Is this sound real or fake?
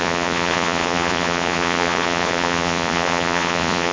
fake